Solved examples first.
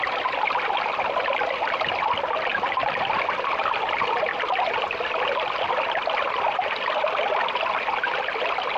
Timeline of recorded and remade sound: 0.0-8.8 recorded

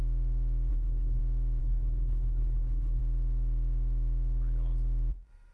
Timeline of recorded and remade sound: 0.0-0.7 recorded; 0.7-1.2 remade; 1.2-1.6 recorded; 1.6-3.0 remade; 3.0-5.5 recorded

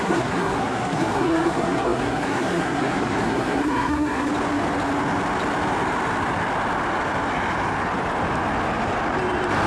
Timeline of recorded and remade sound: 0.0-4.3 remade; 4.3-9.7 recorded